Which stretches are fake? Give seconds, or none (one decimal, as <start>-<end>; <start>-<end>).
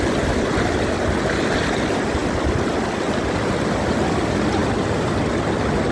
none